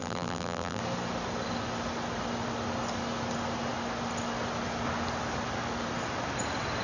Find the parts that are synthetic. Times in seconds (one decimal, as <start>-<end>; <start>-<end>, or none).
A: 0.0-0.8